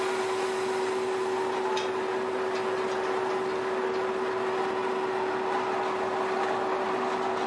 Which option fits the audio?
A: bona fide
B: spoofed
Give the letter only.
A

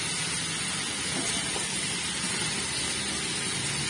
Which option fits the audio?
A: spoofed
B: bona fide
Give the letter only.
B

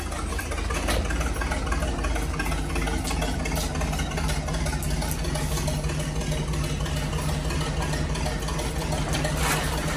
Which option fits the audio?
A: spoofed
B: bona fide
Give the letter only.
B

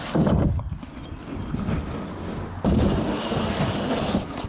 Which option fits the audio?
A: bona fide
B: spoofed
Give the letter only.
A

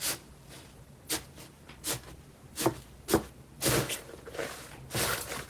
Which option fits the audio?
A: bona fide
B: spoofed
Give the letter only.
A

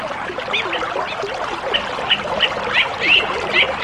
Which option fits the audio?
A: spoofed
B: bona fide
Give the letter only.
A